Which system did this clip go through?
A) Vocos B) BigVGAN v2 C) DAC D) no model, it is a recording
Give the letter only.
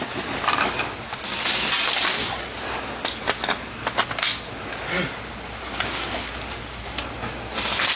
D